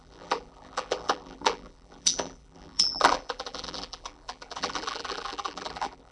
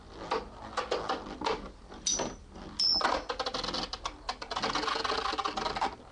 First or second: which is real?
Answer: second